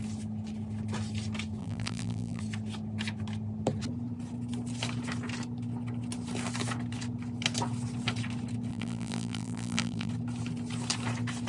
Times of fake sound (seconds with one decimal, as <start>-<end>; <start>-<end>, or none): 1.6-2.4; 8.7-10.1